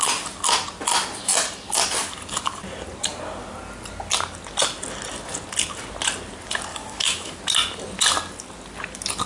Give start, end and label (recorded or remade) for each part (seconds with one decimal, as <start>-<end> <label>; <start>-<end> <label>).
0.0-6.7 recorded; 6.7-7.4 remade; 7.4-9.3 recorded